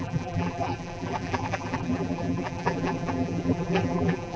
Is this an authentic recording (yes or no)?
no